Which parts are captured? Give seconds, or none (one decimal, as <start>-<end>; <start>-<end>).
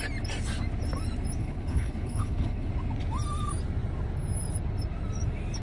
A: 0.0-1.4; 2.7-5.6